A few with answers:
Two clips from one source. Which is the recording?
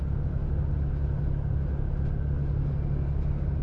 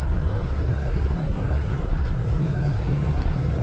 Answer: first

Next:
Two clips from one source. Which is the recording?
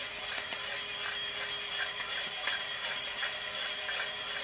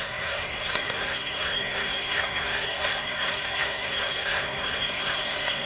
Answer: first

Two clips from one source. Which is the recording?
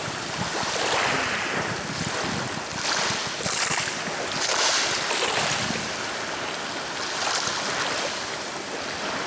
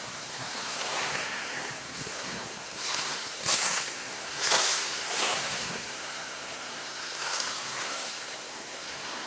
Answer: first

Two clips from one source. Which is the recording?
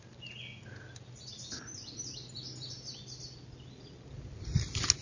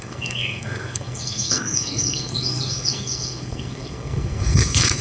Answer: first